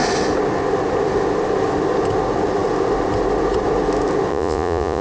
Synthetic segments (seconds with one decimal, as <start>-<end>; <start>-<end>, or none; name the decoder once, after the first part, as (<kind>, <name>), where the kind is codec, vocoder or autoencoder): 4.3-5.0 (vocoder, Vocos)

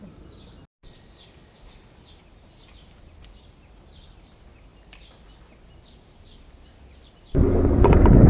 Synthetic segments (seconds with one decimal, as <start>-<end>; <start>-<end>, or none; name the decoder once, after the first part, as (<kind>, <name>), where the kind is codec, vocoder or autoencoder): none

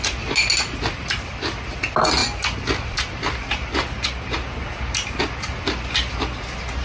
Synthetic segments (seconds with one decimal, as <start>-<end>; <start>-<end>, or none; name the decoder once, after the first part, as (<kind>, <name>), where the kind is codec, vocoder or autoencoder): none